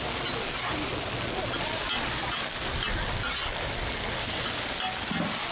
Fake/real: real